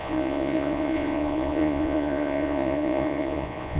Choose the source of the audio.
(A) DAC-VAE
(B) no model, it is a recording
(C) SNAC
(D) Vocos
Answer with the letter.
D